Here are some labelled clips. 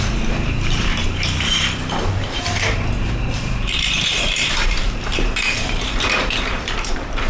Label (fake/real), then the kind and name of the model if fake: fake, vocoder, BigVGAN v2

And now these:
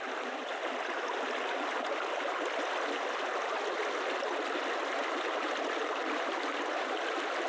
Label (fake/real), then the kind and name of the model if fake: real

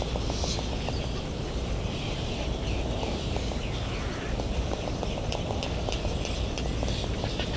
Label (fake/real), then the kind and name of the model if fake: real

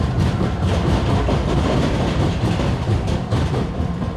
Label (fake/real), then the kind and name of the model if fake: fake, vocoder, BigVGAN v2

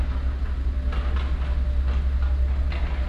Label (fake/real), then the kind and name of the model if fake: real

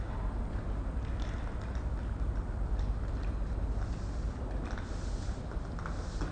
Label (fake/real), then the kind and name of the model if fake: real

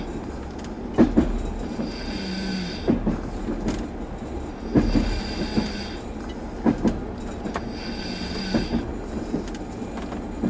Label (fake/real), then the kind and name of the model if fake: real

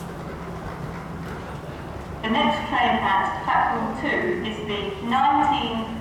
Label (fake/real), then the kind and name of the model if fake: real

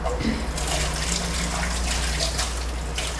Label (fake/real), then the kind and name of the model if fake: real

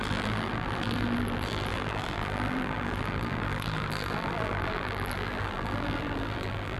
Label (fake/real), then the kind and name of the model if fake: fake, vocoder, BigVGAN v2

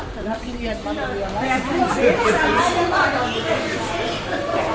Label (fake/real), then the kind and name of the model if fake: real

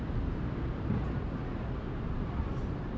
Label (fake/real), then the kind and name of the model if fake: real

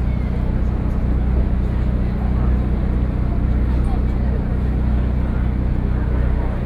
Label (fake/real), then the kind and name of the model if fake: real